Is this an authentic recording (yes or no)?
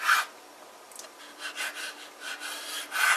yes